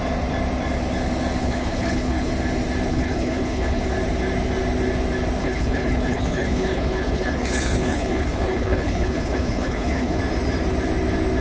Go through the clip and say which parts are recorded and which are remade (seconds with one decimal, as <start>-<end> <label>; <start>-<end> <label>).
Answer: 0.0-1.4 recorded; 1.4-2.3 remade; 2.3-2.9 recorded; 2.9-3.8 remade; 3.8-5.4 recorded; 5.4-10.2 remade; 10.2-11.4 recorded